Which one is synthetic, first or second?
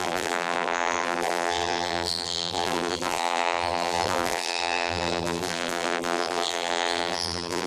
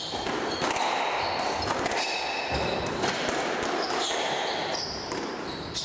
first